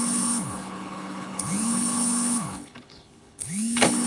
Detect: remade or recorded remade